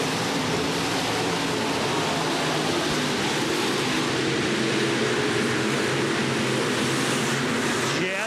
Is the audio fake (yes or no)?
no